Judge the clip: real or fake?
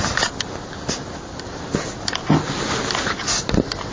real